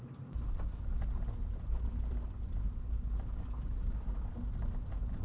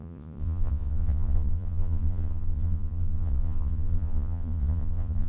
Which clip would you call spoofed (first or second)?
second